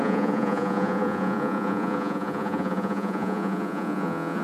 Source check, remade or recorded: remade